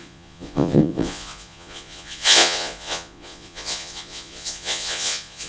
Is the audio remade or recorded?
remade